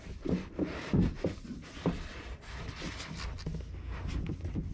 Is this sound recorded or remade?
recorded